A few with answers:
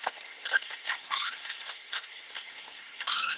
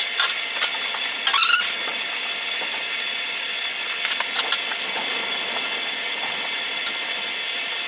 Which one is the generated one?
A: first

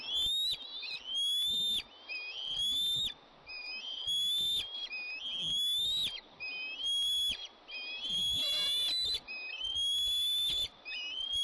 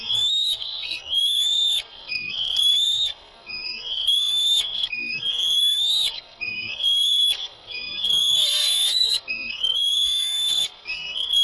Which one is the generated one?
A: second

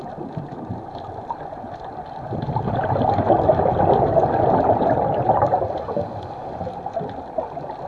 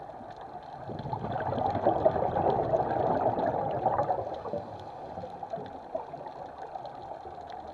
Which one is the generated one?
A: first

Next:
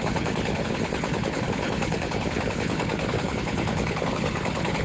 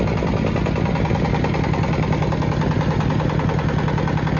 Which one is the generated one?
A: first